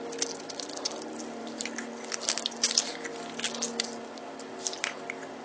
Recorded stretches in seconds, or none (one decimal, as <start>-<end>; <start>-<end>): 0.0-5.4